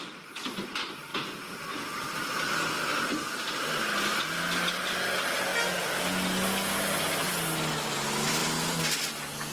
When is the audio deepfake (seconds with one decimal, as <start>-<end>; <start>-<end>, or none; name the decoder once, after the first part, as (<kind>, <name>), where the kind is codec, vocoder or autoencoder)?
none